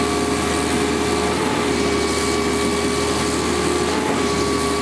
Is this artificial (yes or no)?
no